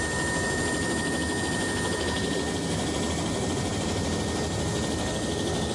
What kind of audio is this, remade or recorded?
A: recorded